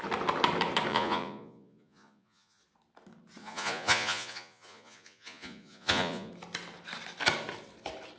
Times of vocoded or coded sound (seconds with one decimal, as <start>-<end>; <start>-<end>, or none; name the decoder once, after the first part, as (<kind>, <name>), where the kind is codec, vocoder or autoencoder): 0.9-2.6 (vocoder, Vocos); 3.4-6.3